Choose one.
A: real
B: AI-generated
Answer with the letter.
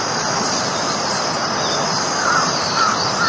A